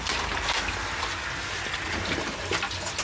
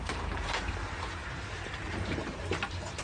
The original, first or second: first